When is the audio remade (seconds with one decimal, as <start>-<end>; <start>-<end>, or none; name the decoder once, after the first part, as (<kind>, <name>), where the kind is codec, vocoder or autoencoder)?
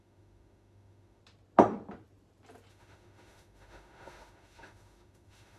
0.0-1.2 (autoencoder, DAC-VAE); 2.7-5.6